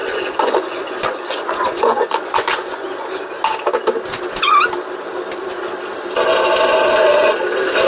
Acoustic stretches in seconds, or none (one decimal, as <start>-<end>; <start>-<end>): 3.2-7.9